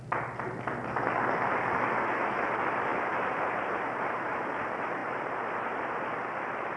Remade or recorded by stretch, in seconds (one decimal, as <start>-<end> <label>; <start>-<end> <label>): 0.0-2.9 recorded; 2.9-4.6 remade; 4.6-6.8 recorded